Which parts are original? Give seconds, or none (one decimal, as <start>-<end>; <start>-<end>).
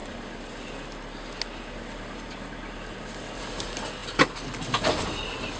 0.0-5.6